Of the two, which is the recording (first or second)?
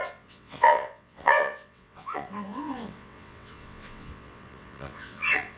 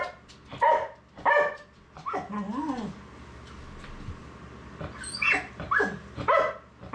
second